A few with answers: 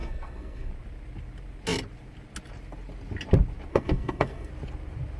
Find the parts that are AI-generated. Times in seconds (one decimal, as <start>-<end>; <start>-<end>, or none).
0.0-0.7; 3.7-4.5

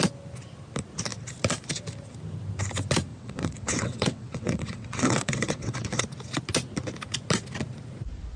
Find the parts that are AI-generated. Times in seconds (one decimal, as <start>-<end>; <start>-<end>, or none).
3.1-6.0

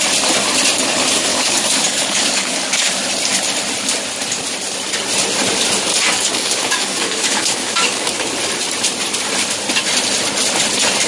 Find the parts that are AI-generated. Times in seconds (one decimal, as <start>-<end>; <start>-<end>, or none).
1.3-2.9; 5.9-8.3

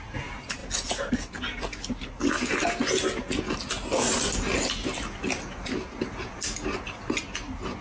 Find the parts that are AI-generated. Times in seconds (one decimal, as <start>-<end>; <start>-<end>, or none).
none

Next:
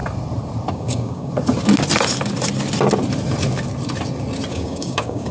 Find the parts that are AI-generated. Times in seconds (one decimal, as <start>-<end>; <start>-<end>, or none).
0.7-1.3; 4.5-5.3

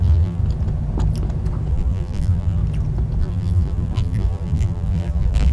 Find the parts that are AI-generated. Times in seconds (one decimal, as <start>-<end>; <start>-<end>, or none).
0.0-0.4; 1.7-2.6; 3.2-5.5

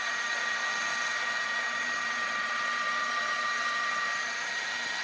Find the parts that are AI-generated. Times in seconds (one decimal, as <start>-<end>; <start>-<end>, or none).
0.0-5.0